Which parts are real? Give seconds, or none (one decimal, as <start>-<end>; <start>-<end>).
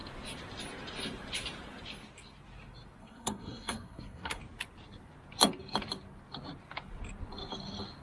0.0-3.0; 4.4-8.0